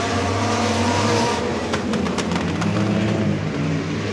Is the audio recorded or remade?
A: remade